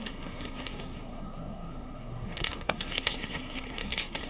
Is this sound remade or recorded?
remade